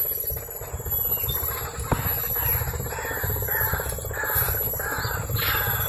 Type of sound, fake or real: real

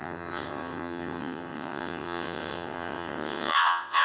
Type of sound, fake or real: fake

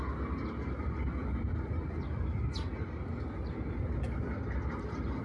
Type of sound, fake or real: real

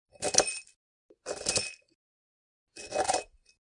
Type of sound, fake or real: real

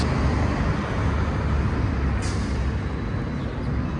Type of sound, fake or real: real